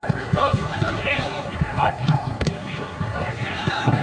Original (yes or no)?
no